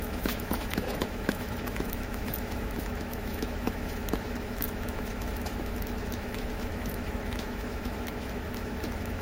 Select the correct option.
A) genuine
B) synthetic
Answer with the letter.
B